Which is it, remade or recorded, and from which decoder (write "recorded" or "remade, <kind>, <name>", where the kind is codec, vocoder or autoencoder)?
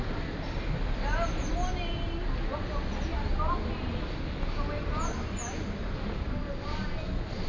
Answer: recorded